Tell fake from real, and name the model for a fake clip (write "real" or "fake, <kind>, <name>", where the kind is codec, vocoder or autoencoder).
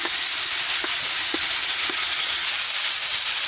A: real